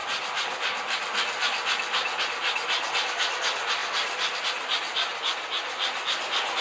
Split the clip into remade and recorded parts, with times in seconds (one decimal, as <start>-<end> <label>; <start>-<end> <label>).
0.0-3.8 recorded; 3.8-4.4 remade; 4.4-6.6 recorded